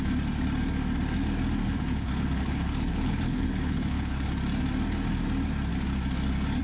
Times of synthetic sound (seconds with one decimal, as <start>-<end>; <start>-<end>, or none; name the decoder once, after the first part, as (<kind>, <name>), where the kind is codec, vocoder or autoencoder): 1.6-4.3 (codec, HILCodec)